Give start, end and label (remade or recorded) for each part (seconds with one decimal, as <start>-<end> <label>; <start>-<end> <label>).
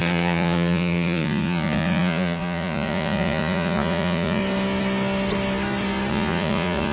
0.0-4.4 remade; 4.4-6.1 recorded; 6.1-6.9 remade